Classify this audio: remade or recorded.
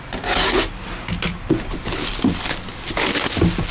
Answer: recorded